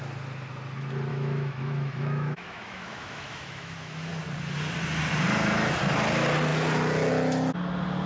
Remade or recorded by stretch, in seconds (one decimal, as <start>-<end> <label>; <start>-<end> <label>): 0.0-1.1 recorded; 1.1-4.1 remade; 4.1-8.1 recorded